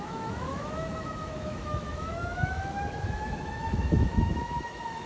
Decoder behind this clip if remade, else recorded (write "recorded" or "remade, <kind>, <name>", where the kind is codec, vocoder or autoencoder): remade, autoencoder, DAC-VAE